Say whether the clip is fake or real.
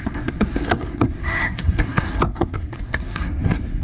fake